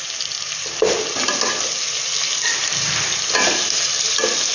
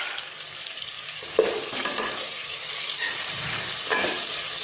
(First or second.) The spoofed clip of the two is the second